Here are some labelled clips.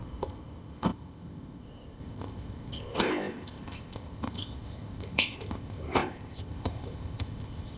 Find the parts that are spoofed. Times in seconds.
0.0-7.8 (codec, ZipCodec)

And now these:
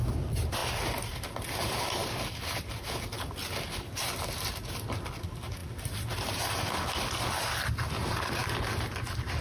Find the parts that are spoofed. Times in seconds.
none

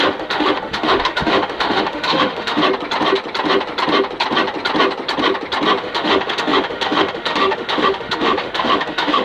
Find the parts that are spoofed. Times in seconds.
0.0-2.6 (autoencoder, DAC-VAE); 5.8-9.2

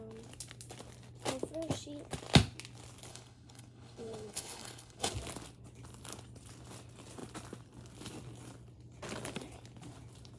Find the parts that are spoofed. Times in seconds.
3.1-5.1 (codec, HILCodec)

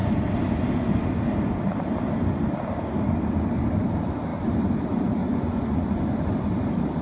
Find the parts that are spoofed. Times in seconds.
5.2-6.0 (vocoder, Vocos)

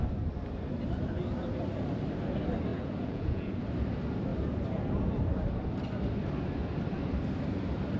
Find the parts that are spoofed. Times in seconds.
2.7-3.6 (vocoder, Vocos)